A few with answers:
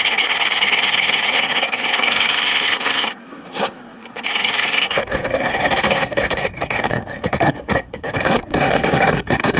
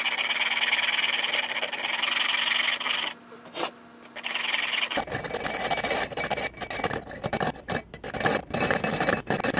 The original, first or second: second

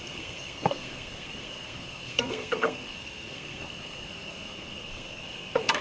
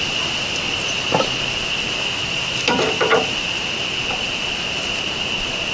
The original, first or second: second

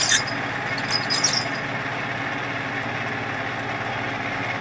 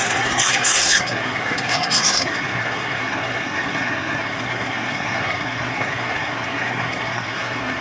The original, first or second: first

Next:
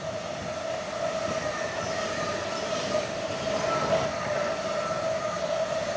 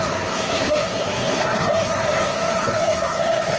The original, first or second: first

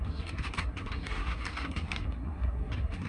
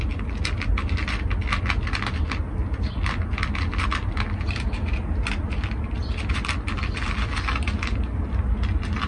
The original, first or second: second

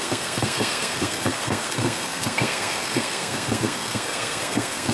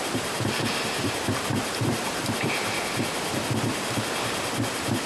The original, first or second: second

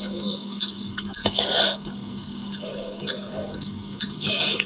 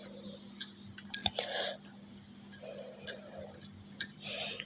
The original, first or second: second